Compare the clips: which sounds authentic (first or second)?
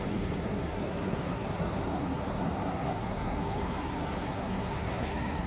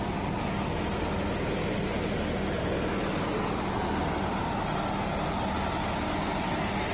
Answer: second